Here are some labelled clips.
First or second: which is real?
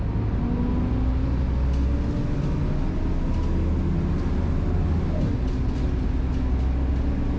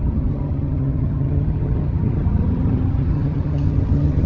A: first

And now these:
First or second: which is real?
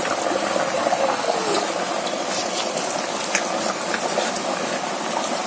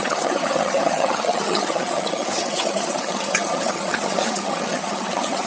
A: first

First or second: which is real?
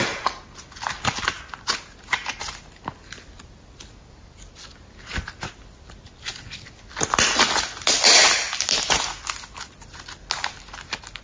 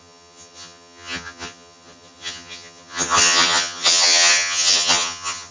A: first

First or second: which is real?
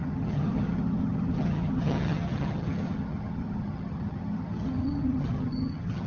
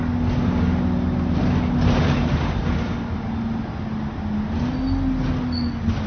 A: second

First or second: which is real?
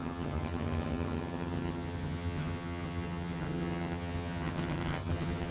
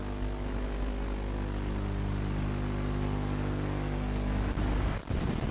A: second